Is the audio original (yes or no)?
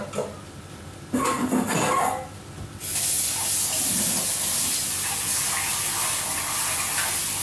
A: yes